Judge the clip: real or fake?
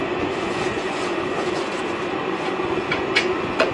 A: fake